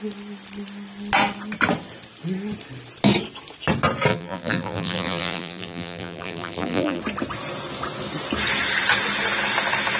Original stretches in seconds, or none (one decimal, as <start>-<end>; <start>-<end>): 0.0-4.1; 7.0-10.0